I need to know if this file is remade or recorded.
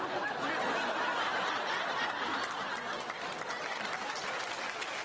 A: recorded